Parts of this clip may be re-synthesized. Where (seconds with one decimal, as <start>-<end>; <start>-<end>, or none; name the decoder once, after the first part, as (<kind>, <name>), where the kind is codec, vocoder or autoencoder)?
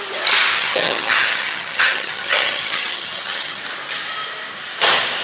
0.5-3.6 (vocoder, HiFi-GAN)